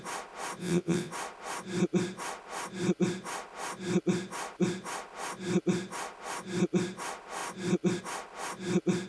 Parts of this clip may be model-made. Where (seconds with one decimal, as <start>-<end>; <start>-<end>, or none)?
0.6-1.1